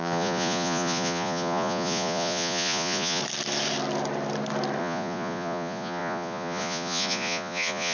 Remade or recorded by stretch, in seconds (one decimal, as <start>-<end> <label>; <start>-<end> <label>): 0.0-3.2 remade; 3.2-4.8 recorded; 4.8-7.9 remade